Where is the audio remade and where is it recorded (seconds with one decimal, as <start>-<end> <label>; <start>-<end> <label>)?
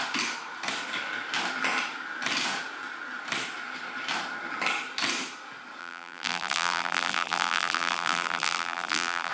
0.0-5.8 recorded; 5.8-9.3 remade